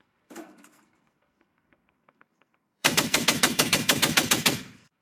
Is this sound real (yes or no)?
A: no